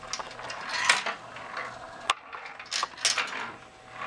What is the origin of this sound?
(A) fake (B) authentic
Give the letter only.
B